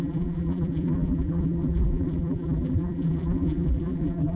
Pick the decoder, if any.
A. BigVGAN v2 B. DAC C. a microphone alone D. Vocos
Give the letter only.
A